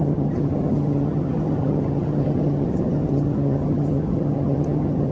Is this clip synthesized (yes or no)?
yes